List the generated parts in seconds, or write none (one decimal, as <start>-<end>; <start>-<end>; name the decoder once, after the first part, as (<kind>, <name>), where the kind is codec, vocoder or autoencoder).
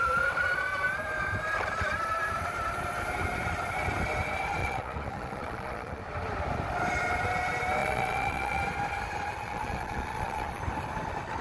4.6-6.0 (vocoder, Vocos); 7.8-8.6; 9.4-10.6